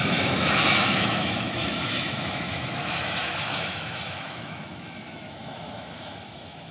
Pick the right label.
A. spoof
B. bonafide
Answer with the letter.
A